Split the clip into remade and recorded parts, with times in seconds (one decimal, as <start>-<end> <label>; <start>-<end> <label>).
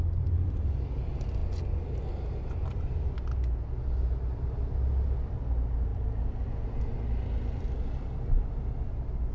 0.0-9.3 recorded